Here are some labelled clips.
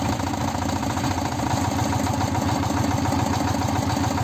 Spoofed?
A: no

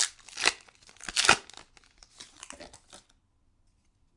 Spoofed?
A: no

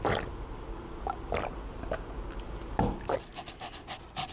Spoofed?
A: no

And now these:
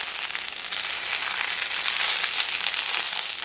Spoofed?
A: no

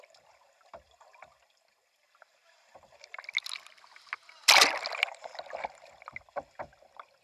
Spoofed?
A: no